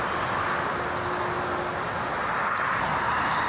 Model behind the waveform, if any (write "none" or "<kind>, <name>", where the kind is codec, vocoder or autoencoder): none